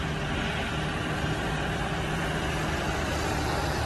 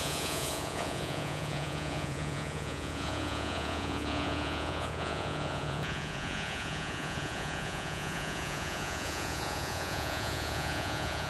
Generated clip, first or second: second